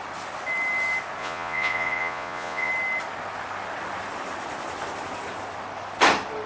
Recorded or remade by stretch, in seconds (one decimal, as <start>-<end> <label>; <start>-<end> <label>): 0.0-1.2 recorded; 1.2-2.7 remade; 2.7-6.5 recorded